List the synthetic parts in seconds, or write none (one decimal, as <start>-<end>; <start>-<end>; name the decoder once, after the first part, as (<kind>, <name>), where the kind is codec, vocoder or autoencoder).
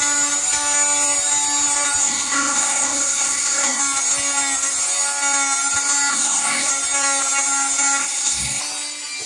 2.0-3.8 (codec, SNAC); 6.1-6.7; 8.0-8.6